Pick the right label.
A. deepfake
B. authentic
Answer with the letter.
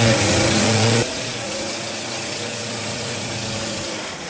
A